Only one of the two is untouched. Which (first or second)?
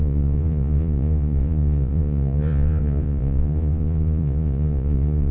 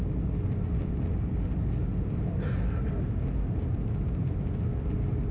second